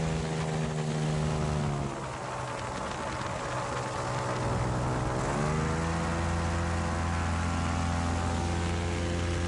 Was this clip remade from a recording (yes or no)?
no